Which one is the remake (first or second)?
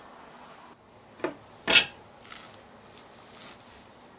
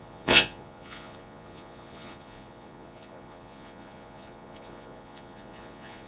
second